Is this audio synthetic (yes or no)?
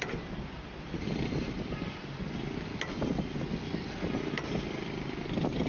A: no